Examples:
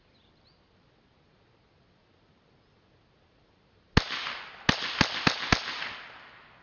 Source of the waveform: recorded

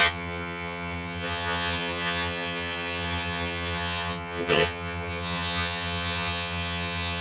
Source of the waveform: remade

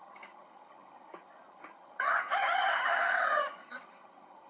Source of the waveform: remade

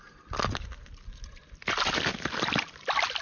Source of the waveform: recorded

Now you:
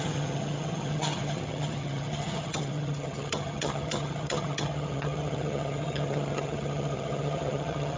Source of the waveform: remade